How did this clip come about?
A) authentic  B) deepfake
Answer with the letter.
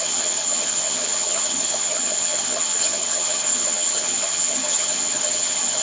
B